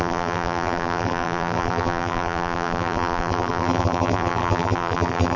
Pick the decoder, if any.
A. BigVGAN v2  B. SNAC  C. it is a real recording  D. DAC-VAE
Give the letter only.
A